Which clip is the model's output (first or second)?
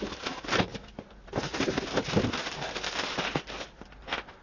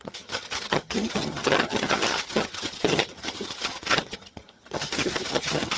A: second